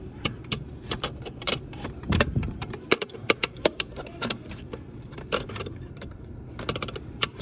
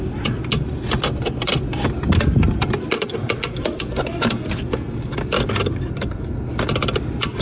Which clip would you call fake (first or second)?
first